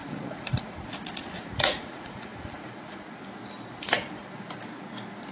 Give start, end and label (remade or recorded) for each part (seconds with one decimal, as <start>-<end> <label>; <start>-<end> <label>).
0.0-3.2 remade; 3.2-5.3 recorded